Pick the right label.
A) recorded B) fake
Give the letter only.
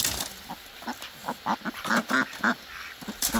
A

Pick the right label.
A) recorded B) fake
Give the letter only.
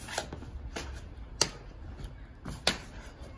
A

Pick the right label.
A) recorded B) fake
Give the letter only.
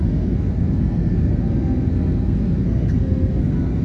B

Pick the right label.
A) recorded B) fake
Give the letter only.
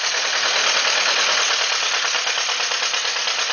A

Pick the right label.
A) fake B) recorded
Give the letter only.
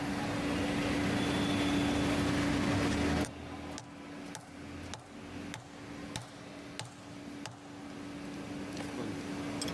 B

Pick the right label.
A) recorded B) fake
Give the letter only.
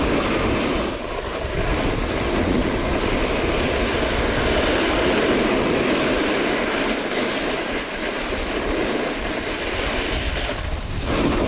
A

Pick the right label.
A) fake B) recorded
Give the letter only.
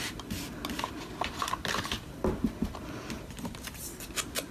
B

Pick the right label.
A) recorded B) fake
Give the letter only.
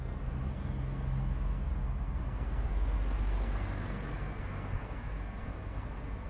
B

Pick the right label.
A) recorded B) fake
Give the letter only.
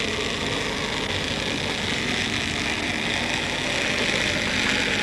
A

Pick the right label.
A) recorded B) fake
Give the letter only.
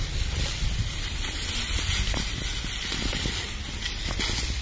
A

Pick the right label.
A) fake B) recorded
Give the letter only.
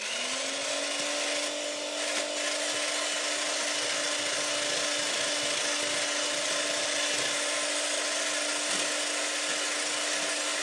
B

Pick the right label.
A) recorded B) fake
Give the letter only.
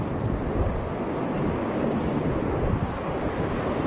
A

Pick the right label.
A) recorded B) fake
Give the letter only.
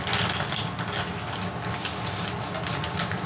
A